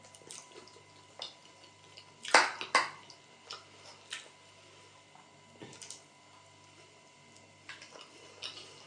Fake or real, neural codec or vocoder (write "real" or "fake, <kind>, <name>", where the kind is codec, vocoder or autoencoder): real